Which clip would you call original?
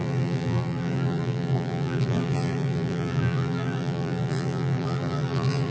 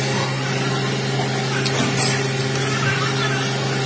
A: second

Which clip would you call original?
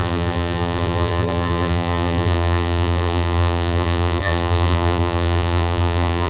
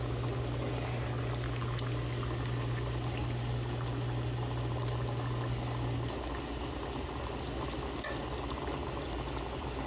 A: second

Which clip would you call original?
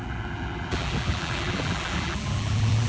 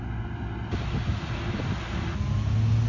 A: second